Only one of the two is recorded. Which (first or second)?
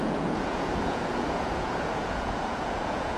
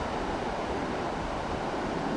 second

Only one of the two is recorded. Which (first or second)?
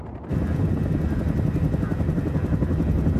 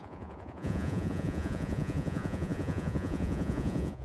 first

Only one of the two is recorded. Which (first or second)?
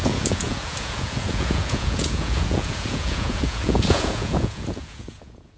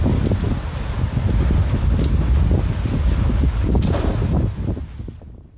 second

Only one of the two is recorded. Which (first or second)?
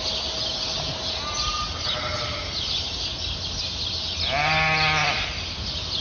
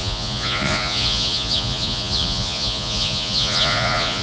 first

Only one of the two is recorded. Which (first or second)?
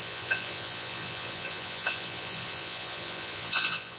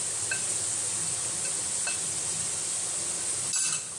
second